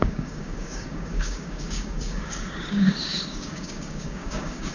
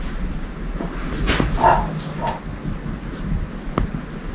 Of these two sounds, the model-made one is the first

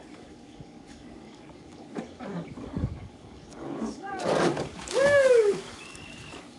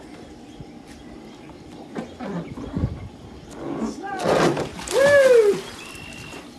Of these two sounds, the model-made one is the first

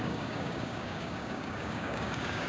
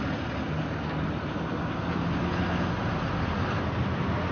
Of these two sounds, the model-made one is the first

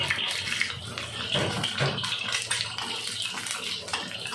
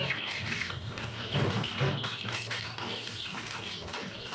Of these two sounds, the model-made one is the second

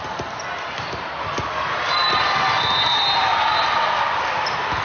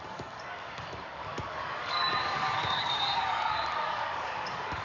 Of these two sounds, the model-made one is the second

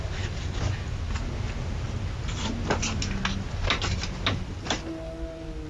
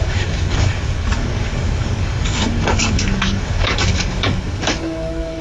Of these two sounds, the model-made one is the second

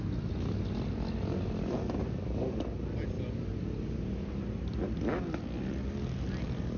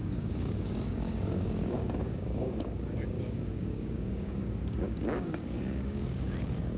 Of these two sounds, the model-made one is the second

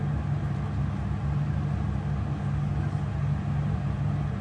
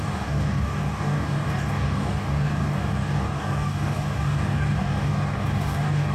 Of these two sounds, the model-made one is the second